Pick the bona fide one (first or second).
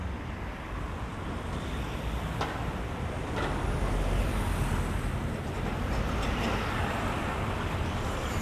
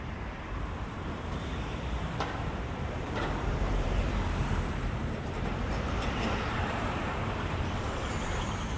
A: first